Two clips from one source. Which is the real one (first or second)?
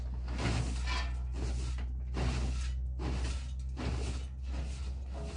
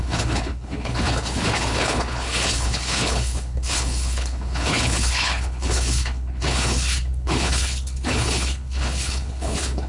first